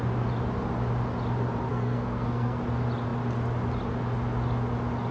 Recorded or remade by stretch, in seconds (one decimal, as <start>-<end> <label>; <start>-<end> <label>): 0.0-1.7 recorded; 1.7-2.6 remade; 2.6-5.1 recorded